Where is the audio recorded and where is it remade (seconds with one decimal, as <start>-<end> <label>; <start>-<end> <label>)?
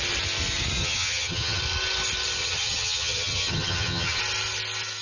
0.0-0.8 recorded; 0.8-1.6 remade; 1.6-2.4 recorded; 2.4-4.2 remade; 4.2-5.0 recorded